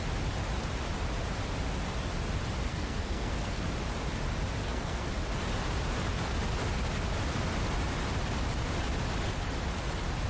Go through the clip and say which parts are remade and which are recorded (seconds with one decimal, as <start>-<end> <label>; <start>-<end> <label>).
0.0-2.7 recorded; 2.7-3.6 remade; 3.6-4.6 recorded; 4.6-5.1 remade; 5.1-10.3 recorded